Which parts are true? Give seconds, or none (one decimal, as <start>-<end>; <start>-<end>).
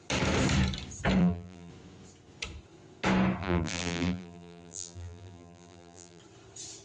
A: 0.0-1.2; 1.7-3.4; 6.2-6.8